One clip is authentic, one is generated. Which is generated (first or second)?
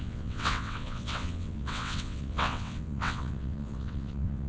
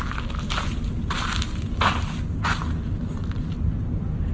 first